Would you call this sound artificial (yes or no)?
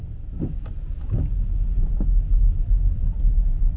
no